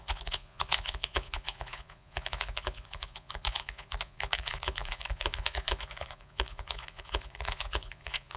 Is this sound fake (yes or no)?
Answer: yes